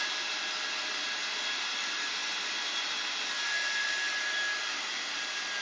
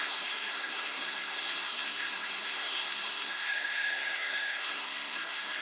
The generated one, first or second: second